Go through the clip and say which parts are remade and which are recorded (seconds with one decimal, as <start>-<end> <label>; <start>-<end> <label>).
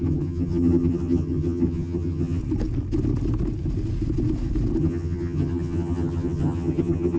0.0-2.4 remade; 2.4-4.8 recorded; 4.8-7.2 remade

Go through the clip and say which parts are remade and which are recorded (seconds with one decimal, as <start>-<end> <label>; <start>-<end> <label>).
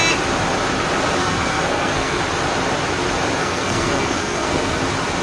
0.0-1.2 recorded; 1.2-2.2 remade; 2.2-3.4 recorded; 3.4-4.8 remade; 4.8-5.2 recorded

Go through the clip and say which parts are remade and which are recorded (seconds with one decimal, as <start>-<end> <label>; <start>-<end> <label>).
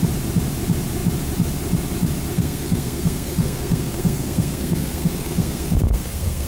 0.0-2.3 recorded; 2.3-6.5 remade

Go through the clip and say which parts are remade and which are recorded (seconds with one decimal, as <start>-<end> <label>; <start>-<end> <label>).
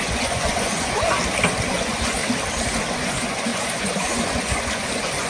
0.0-1.2 remade; 1.2-1.7 recorded; 1.7-2.2 remade; 2.2-2.8 recorded; 2.8-5.3 remade